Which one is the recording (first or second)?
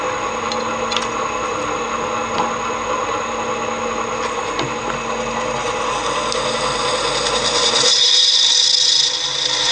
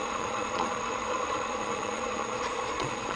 first